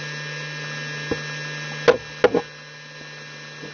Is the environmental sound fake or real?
real